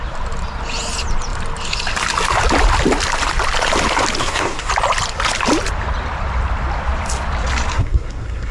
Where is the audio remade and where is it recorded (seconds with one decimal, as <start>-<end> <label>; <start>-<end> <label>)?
0.0-4.2 recorded; 4.2-4.7 remade; 4.7-7.7 recorded; 7.7-8.5 remade